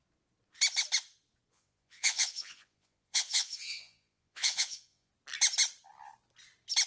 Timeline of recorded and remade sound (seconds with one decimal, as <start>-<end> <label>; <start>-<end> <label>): 0.0-1.5 recorded; 1.5-5.1 remade; 5.1-6.9 recorded